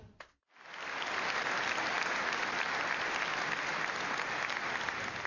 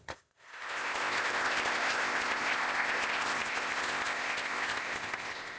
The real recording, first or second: first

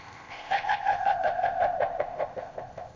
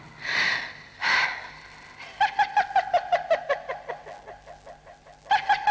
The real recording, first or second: second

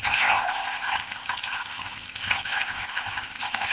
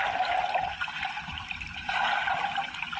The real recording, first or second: second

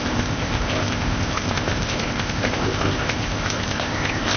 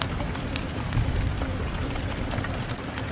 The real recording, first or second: second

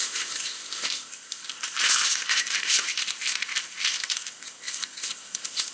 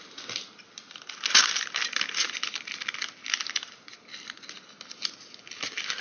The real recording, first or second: second